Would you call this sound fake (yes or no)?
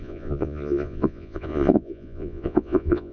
yes